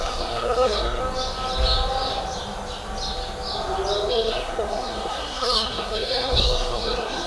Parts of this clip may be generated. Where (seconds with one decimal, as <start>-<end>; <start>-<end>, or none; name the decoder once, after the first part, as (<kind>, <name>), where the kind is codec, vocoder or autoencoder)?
0.0-1.0 (codec, SNAC); 4.1-7.3